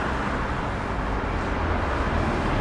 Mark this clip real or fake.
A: real